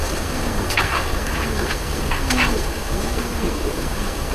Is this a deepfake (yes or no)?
yes